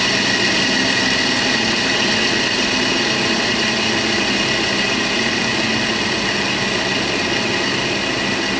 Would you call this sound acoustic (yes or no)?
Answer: yes